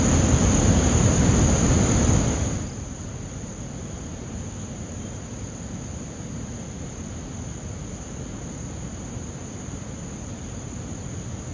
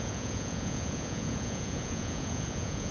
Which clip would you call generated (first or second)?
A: second